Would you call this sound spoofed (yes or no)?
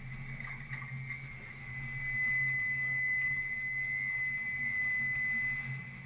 no